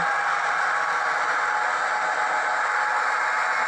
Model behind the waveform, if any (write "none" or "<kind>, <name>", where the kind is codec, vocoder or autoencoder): none